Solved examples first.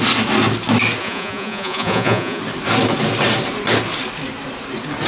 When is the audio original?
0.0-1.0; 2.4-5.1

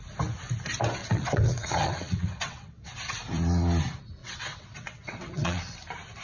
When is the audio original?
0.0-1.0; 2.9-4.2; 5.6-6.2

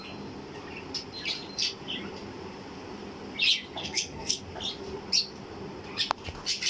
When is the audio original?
0.0-3.8; 4.4-6.7

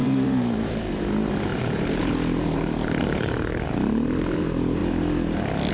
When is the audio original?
4.8-5.7

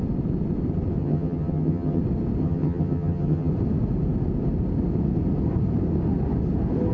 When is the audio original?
0.0-1.0; 2.0-2.4; 3.5-6.9

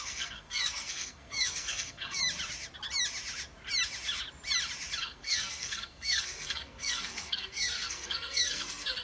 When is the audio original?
2.2-5.0

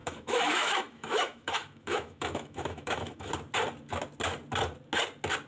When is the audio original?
3.3-5.5